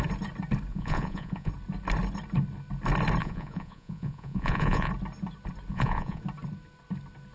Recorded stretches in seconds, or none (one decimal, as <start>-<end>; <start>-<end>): 0.0-0.7; 1.5-3.2; 4.9-5.7; 6.2-7.3